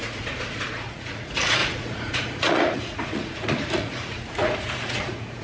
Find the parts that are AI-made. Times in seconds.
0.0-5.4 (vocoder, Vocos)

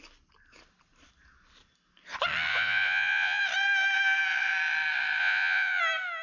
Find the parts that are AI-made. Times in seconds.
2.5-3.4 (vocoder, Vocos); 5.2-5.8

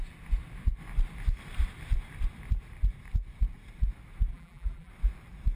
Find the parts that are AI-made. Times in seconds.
4.3-4.9 (vocoder, BigVGAN v2)

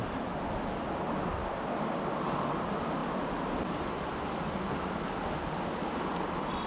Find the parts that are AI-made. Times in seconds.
none